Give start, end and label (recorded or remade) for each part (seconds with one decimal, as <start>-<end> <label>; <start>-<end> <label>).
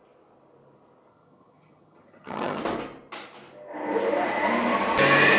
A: 0.0-1.1 recorded; 1.1-2.6 remade; 2.6-5.4 recorded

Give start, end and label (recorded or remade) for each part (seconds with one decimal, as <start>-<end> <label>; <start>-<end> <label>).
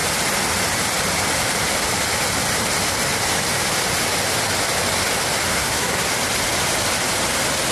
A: 0.0-5.5 recorded; 5.5-6.1 remade; 6.1-7.7 recorded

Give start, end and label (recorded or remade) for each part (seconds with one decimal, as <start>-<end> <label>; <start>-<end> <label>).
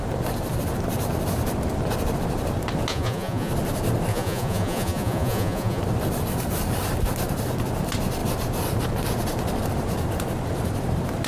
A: 0.0-2.9 recorded; 2.9-3.5 remade; 3.5-4.1 recorded; 4.1-5.8 remade; 5.8-11.3 recorded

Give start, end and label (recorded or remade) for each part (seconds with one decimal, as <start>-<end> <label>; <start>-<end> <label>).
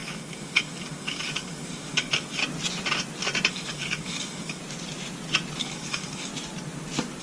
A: 0.0-2.4 remade; 2.4-3.5 recorded; 3.5-4.6 remade; 4.6-5.6 recorded; 5.6-6.3 remade; 6.3-7.2 recorded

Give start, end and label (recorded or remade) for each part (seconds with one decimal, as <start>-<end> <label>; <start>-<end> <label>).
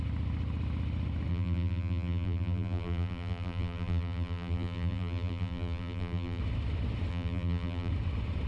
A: 0.0-1.3 recorded; 1.3-6.4 remade; 6.4-7.1 recorded; 7.1-7.9 remade; 7.9-8.5 recorded